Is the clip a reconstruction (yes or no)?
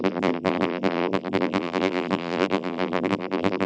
yes